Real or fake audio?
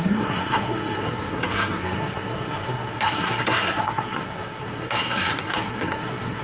fake